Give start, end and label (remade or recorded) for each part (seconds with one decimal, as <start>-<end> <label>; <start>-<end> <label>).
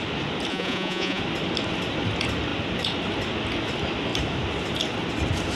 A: 0.0-0.5 recorded; 0.5-1.2 remade; 1.2-5.6 recorded